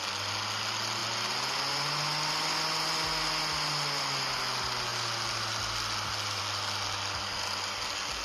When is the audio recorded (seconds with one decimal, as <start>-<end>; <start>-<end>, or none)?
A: 0.0-8.2